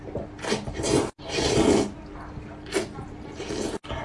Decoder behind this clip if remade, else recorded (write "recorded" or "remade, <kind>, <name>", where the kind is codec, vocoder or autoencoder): recorded